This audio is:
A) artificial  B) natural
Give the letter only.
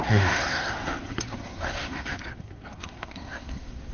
A